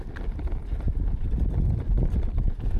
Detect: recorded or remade recorded